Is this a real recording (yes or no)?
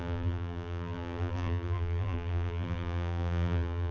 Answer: no